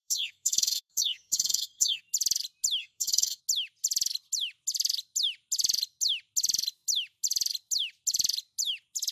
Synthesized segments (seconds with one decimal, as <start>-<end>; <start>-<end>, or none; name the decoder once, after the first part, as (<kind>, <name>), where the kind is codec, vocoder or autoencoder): 0.0-2.0 (codec, SNAC); 2.8-3.4